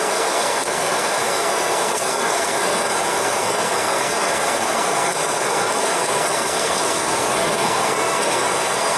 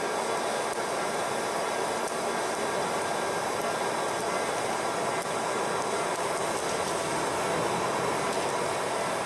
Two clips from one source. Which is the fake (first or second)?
first